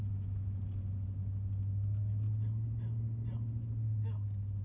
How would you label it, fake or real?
real